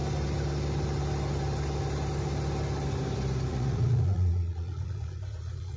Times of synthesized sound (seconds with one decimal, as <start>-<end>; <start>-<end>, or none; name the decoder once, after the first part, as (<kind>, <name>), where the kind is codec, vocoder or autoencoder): 3.5-5.8 (vocoder, Vocos)